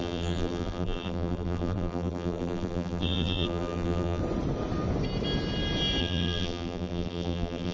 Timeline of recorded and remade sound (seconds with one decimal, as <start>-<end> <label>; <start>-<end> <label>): 0.0-4.2 remade; 4.2-6.0 recorded; 6.0-7.7 remade